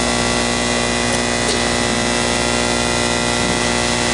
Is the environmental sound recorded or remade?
recorded